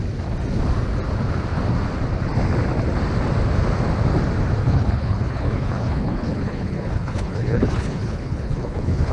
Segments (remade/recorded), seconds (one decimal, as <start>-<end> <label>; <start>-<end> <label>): 0.0-4.6 recorded; 4.6-9.1 remade